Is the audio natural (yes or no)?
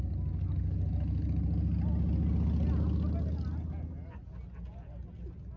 yes